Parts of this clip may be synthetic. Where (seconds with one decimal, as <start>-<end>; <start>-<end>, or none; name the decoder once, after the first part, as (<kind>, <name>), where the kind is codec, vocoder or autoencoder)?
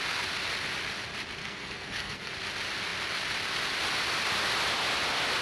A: 1.4-2.3 (codec, SNAC)